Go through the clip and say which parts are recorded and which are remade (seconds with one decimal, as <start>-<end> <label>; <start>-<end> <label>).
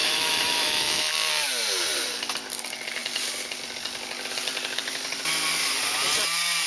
0.0-1.1 remade; 1.1-6.7 recorded